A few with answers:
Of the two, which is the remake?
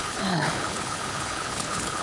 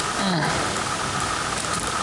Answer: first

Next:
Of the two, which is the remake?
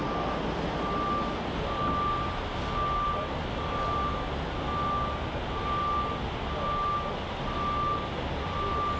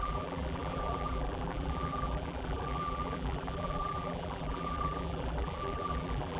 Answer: second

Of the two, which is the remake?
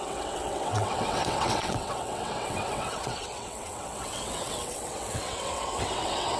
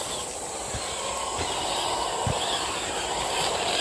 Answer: first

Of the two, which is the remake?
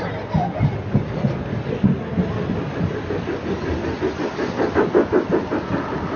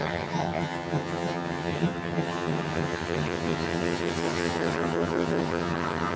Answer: second